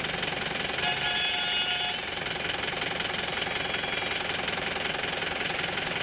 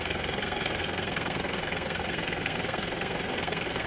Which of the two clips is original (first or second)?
first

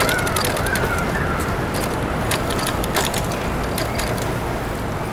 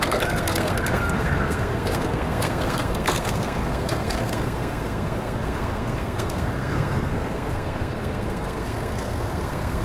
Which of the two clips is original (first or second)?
first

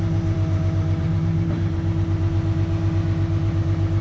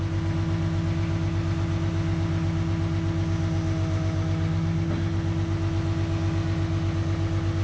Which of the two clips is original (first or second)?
second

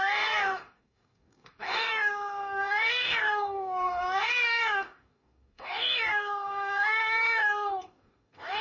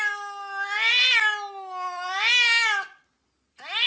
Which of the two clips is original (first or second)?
second